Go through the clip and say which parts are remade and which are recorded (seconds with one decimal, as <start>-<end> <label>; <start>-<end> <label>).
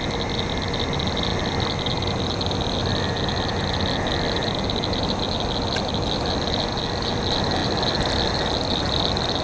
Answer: 0.0-9.4 recorded